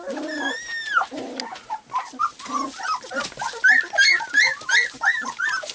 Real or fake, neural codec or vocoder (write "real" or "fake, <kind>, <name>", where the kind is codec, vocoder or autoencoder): real